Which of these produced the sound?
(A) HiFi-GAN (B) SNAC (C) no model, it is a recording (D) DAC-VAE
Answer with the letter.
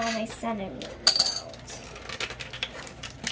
C